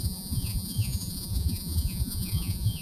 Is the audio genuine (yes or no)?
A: no